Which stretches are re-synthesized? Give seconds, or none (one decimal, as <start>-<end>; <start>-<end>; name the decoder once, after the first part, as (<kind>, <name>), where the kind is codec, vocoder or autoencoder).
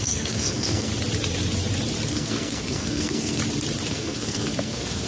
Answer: 0.0-0.9 (codec, SNAC); 2.1-3.4; 3.9-5.1